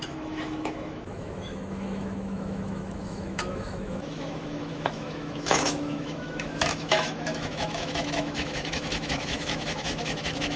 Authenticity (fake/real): fake